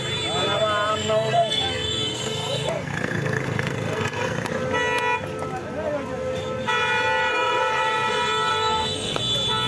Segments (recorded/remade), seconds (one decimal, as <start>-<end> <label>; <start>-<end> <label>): 0.0-0.9 recorded; 0.9-4.5 remade; 4.5-7.3 recorded; 7.3-8.1 remade; 8.1-8.5 recorded; 8.5-9.2 remade; 9.2-9.7 recorded